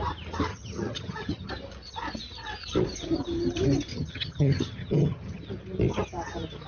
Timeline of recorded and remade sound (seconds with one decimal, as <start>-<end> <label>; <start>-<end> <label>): 0.0-0.5 recorded; 0.5-1.5 remade; 1.5-3.9 recorded; 3.9-5.4 remade; 5.4-6.7 recorded